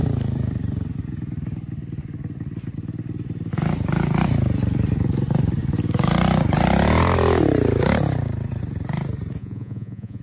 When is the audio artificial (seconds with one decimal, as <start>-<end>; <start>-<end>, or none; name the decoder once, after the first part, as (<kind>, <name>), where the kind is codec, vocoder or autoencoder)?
9.4-10.2 (vocoder, Vocos)